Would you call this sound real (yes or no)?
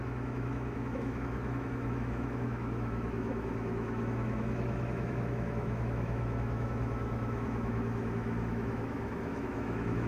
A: no